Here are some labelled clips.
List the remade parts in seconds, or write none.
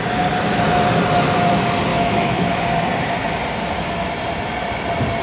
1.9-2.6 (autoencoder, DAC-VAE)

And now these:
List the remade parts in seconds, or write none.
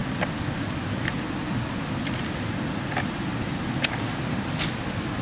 none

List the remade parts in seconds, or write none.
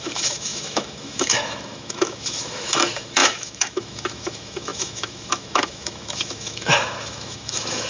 0.0-7.9 (autoencoder, DAC-VAE)